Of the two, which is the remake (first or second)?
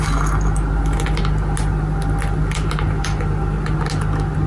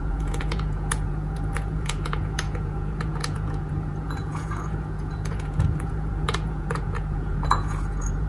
second